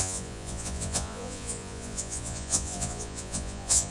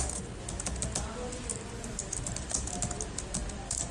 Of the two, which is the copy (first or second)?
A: first